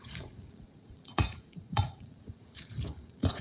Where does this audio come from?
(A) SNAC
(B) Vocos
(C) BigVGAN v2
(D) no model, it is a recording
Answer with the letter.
B